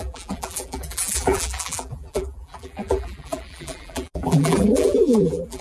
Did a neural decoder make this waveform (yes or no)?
yes